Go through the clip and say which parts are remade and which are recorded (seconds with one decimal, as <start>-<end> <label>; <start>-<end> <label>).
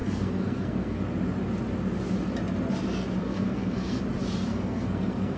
0.0-1.0 remade; 1.0-3.2 recorded; 3.2-4.0 remade; 4.0-4.5 recorded; 4.5-5.4 remade